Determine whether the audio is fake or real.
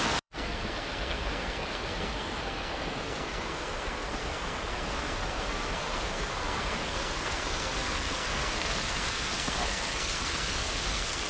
fake